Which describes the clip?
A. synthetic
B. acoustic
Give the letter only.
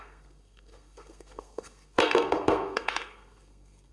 A